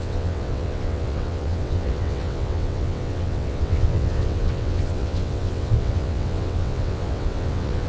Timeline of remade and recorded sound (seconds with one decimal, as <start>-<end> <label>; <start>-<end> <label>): 0.0-7.9 remade